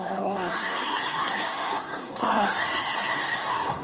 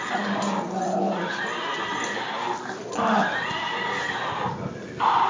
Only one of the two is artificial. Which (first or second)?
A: first